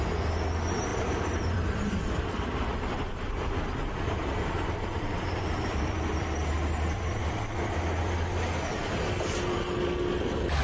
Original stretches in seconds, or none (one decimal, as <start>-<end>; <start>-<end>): 0.0-0.9; 5.8-10.6